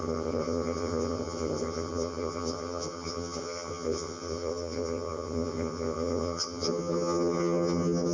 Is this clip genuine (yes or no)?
no